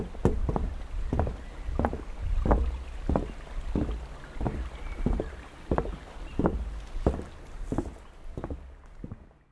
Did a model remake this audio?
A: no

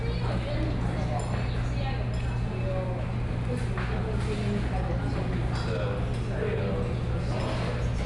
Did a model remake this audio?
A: no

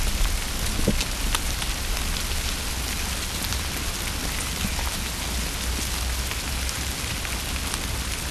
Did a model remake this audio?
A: no